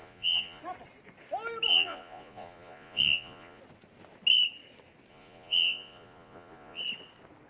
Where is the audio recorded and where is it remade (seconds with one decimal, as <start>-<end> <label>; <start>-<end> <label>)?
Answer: 0.0-0.6 remade; 0.6-1.7 recorded; 1.7-3.6 remade; 3.6-5.1 recorded; 5.1-6.8 remade; 6.8-7.5 recorded